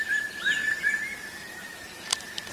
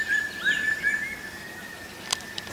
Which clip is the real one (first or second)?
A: second